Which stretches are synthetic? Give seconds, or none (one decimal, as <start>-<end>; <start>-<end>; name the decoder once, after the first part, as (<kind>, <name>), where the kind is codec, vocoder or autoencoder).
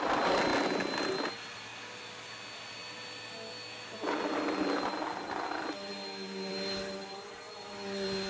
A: none